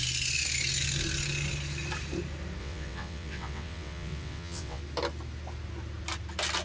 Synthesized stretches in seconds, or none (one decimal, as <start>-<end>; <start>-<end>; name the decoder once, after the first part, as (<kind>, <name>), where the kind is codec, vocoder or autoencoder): 2.6-4.8 (vocoder, WaveNeXt)